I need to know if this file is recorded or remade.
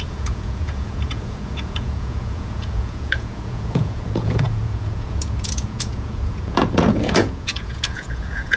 remade